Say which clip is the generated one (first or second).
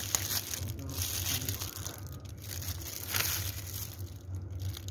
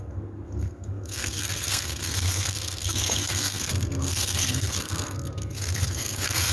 second